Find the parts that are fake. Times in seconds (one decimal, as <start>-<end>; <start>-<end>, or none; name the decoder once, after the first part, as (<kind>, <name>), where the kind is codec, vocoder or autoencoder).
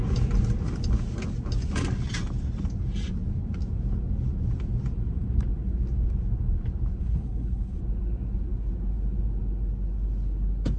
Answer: 7.0-7.8 (codec, HILCodec)